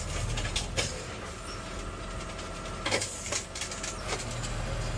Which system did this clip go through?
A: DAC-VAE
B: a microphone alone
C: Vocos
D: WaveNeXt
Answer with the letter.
B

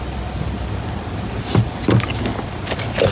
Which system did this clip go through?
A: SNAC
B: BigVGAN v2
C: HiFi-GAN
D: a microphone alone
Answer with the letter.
D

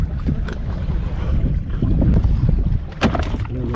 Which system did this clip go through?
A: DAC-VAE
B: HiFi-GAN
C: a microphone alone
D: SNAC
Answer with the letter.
C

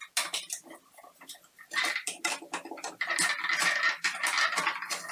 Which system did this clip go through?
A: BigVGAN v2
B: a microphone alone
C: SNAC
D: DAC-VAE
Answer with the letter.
B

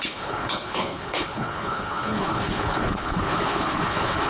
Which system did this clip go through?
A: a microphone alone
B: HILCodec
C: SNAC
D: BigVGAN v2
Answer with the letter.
B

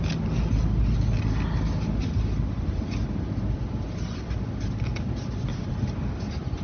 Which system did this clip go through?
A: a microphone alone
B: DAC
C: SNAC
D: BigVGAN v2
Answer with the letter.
A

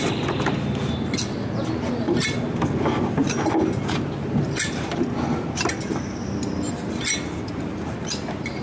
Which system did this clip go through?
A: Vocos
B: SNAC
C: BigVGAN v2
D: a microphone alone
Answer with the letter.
D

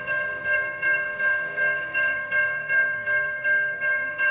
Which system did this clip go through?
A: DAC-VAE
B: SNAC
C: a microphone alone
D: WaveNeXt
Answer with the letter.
B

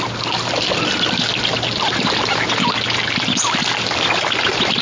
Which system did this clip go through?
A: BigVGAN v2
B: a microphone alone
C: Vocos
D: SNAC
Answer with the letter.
B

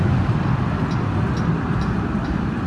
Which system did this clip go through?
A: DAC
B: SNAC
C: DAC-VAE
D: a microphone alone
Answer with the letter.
D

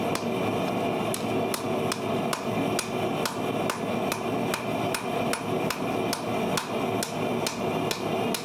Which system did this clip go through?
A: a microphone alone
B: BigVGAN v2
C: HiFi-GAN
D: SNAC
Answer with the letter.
A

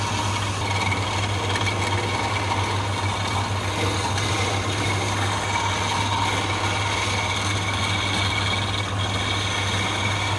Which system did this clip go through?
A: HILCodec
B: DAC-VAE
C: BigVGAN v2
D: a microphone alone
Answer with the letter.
D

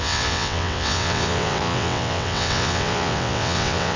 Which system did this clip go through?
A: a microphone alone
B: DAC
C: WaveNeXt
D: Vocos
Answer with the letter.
C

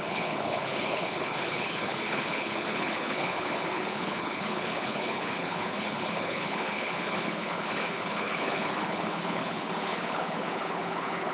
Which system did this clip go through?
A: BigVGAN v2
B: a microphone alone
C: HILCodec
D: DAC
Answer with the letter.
C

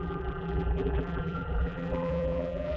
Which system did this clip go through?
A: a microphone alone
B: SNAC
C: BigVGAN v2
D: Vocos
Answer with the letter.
C